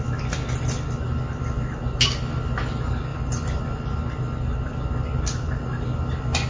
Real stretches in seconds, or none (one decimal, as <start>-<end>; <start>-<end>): 0.0-6.5